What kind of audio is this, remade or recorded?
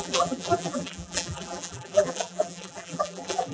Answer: remade